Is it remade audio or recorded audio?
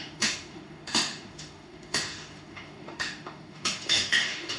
remade